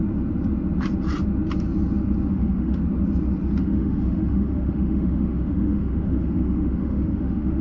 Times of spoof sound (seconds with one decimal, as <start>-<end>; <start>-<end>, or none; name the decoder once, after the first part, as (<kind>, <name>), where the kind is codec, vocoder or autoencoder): 2.3-2.8 (autoencoder, DAC-VAE); 3.6-7.6